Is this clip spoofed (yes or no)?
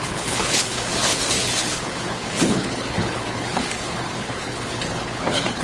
yes